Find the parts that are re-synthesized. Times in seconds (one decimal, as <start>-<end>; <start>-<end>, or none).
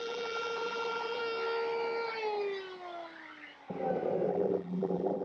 0.0-1.2; 4.3-5.2